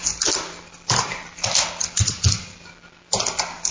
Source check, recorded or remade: recorded